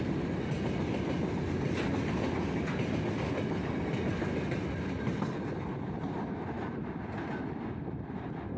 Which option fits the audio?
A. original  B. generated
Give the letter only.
A